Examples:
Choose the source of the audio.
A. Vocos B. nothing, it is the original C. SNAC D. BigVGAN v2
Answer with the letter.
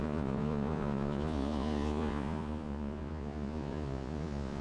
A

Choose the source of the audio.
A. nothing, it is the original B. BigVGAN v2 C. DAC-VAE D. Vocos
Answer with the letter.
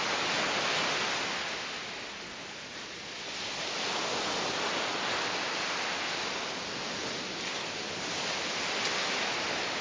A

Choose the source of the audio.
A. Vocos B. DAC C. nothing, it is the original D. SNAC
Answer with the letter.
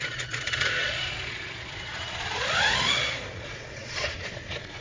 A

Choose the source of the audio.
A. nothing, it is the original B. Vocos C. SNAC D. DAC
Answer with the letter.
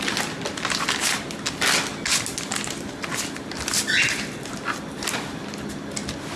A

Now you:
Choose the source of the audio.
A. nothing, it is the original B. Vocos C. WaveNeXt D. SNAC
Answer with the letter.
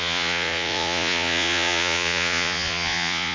B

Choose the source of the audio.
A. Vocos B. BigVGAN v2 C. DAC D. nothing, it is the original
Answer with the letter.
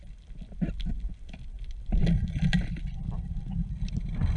D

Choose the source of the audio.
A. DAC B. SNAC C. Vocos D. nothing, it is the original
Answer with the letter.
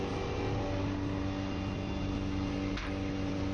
D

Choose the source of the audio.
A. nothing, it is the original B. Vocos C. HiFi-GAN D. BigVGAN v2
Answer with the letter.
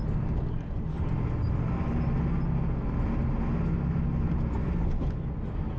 A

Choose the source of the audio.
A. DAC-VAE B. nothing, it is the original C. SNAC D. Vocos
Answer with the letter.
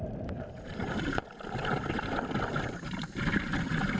B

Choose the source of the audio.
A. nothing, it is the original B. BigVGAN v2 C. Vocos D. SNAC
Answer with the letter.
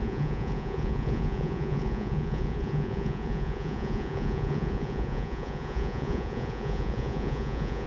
C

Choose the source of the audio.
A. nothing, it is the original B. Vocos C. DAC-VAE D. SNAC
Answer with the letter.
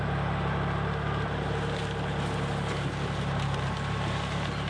A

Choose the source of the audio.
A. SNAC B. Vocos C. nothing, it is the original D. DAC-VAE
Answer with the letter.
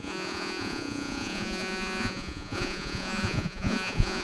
B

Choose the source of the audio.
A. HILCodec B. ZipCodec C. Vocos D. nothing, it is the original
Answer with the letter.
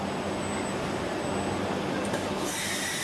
D